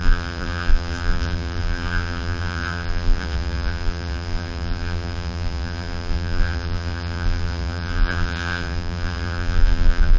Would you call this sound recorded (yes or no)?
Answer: no